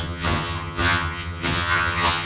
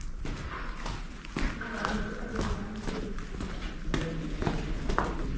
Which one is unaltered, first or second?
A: second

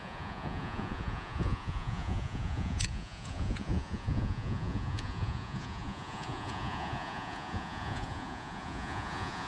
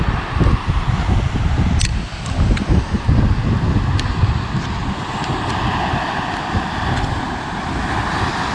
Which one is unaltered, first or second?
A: second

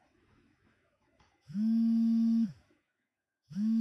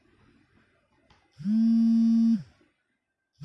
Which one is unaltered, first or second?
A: second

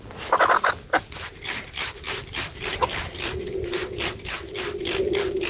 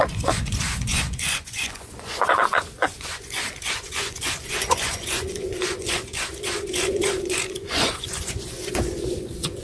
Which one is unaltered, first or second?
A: first